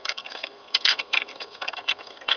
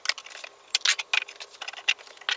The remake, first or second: first